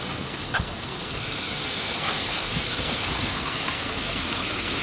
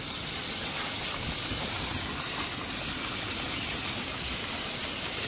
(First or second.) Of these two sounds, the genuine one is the second